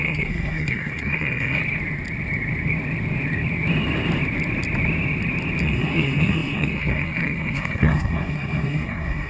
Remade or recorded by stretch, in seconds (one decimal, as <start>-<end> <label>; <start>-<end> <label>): 0.0-1.6 remade; 1.6-5.6 recorded; 5.6-9.3 remade